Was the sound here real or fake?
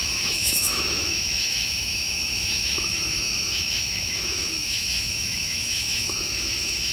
fake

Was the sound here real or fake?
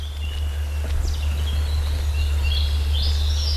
real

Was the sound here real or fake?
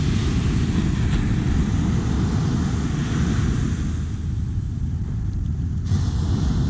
real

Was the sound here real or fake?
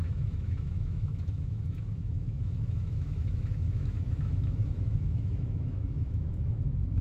fake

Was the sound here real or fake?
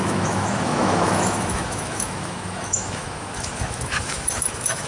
fake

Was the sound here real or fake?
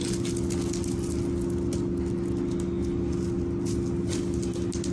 real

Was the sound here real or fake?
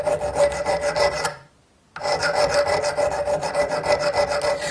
real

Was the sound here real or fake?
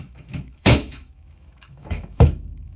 fake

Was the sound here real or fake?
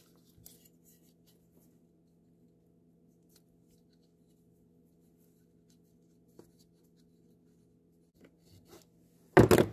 real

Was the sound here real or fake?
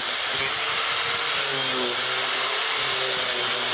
real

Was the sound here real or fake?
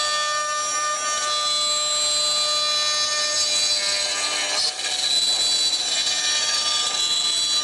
real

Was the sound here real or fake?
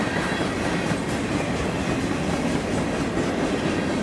real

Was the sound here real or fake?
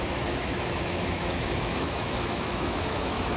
fake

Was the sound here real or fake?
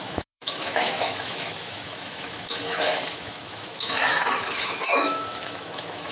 fake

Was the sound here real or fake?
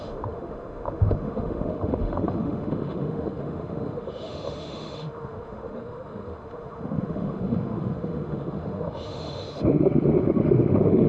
fake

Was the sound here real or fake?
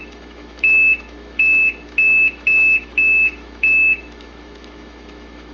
fake